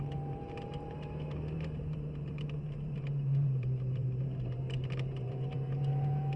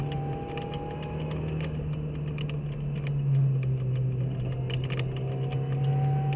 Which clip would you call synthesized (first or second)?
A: first